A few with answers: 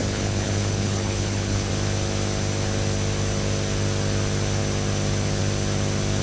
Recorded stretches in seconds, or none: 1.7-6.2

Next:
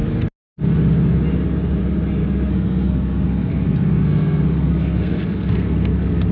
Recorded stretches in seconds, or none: 0.0-2.2

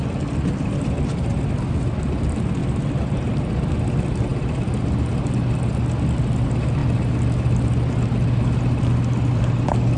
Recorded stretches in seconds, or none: 0.0-10.0

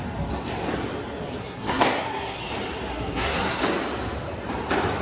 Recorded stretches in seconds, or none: 0.0-1.4; 2.4-2.9; 3.6-5.0

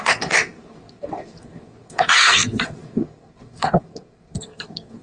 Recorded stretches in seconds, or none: none

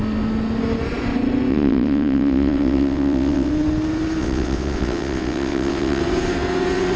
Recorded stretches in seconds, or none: 0.0-1.5; 3.5-4.2; 6.0-7.0

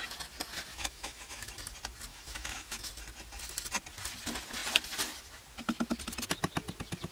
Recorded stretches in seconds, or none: 0.0-0.7; 1.5-2.1; 2.9-7.1

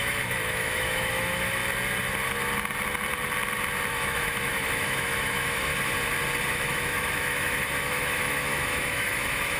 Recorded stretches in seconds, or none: 1.6-3.9; 5.7-6.5